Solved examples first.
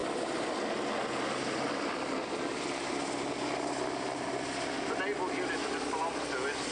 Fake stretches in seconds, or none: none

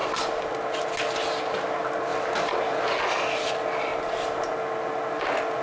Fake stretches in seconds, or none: 0.0-0.5 (vocoder, BigVGAN v2); 3.9-4.5